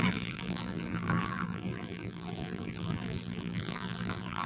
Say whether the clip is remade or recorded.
remade